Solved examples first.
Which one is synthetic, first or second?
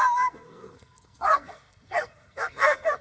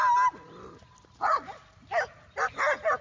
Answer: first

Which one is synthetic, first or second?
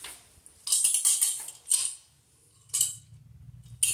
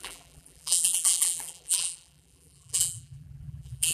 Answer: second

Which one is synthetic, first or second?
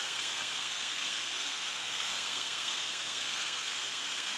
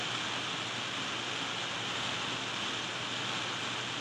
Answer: first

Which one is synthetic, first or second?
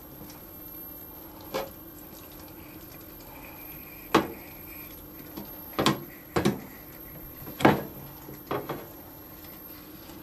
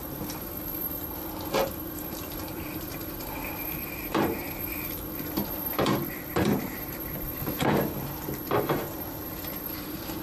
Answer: second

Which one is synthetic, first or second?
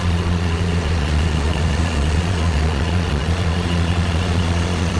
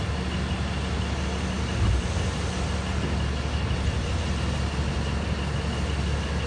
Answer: first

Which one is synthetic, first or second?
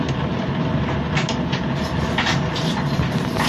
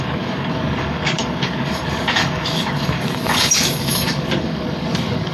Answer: second